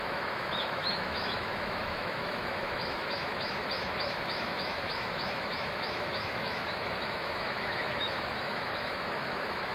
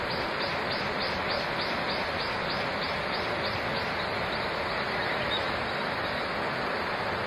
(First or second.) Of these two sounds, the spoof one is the first